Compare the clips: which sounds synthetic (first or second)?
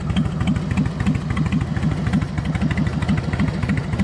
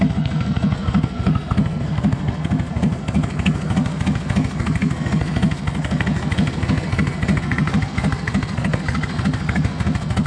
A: second